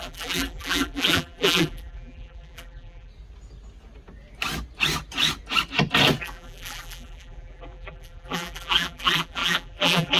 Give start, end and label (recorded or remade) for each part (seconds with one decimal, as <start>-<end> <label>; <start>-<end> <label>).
0.0-3.1 remade; 3.1-6.2 recorded; 6.2-10.2 remade